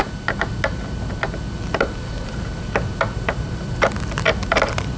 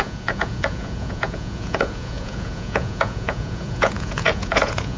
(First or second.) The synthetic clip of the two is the second